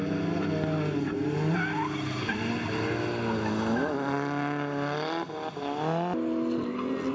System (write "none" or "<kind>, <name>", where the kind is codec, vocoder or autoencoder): none